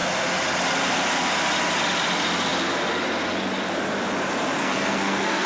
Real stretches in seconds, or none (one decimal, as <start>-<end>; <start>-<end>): 0.0-4.6